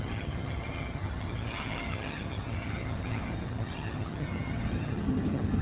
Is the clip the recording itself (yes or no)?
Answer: no